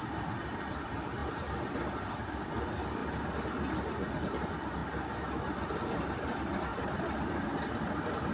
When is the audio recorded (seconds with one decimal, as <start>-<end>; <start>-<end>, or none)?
3.0-4.1; 4.8-5.7